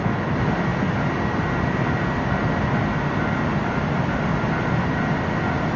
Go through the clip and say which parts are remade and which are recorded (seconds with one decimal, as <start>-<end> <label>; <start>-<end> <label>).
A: 0.0-5.8 recorded